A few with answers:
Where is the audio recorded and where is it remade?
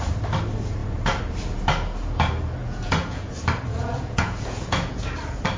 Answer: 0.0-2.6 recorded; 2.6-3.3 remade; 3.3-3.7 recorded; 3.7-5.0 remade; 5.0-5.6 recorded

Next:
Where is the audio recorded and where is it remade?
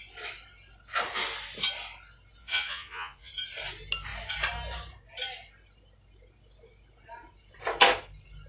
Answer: 0.0-2.4 recorded; 2.4-3.3 remade; 3.3-8.5 recorded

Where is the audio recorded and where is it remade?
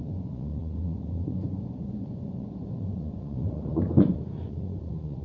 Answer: 0.0-5.2 remade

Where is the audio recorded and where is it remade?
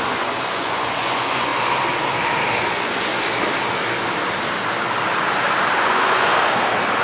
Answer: 0.0-1.5 remade; 1.5-2.7 recorded; 2.7-3.1 remade; 3.1-5.8 recorded; 5.8-6.3 remade; 6.3-7.0 recorded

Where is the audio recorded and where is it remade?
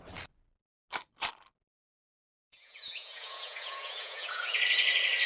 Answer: 0.0-2.4 recorded; 2.4-4.6 remade; 4.6-5.3 recorded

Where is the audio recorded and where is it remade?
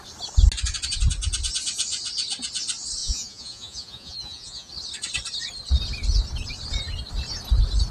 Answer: 0.0-3.0 recorded; 3.0-4.7 remade; 4.7-7.9 recorded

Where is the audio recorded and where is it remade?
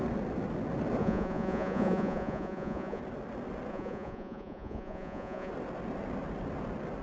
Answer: 0.0-1.0 recorded; 1.0-3.0 remade; 3.0-3.7 recorded; 3.7-5.5 remade; 5.5-7.0 recorded